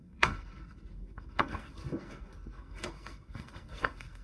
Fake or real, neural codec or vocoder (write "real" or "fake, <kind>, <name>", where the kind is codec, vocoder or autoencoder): fake, codec, SNAC